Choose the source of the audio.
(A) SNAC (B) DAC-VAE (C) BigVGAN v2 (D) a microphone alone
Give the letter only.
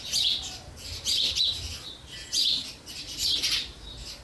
D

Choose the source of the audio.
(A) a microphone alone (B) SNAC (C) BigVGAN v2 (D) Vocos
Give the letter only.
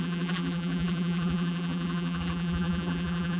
C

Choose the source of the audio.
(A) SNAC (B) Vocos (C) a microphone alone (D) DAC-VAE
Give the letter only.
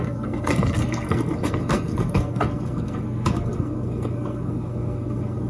A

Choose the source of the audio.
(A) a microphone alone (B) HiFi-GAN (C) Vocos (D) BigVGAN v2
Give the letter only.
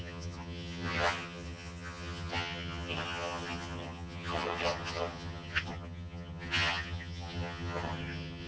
B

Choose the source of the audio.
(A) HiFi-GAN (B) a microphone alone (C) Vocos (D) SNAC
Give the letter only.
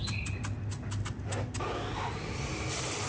B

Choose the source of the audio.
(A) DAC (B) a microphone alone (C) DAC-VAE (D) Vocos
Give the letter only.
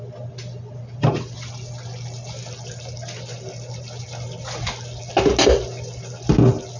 B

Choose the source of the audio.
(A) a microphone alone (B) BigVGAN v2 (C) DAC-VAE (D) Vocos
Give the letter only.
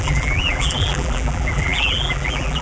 B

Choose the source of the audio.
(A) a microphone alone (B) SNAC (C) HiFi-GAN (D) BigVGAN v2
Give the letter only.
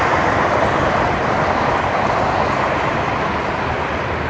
A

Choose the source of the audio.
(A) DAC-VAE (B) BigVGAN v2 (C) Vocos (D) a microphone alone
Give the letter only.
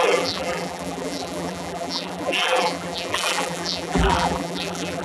B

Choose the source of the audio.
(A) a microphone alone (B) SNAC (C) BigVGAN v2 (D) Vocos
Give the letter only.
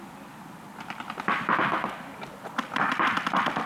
A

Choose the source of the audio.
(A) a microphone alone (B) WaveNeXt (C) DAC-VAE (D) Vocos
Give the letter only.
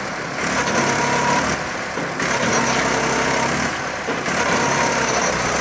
A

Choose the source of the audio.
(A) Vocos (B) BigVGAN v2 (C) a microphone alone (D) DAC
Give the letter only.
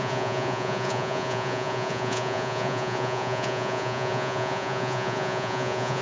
A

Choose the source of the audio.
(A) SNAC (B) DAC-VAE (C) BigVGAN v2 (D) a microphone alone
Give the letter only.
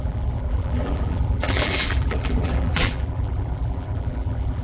C